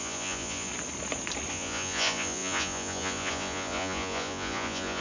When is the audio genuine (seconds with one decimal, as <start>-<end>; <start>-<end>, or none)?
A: 0.7-1.5